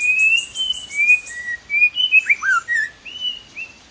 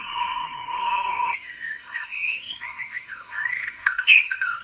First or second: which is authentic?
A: first